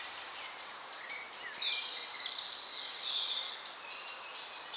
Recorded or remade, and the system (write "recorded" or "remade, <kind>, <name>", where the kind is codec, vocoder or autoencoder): recorded